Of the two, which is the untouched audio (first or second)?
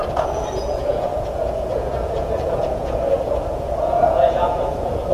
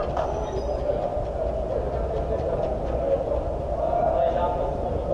second